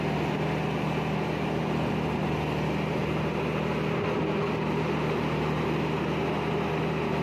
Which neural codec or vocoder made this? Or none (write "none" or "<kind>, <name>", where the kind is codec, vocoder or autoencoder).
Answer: none